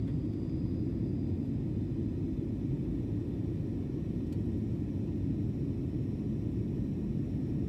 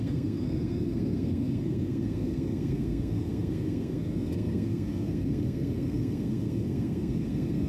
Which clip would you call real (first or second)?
first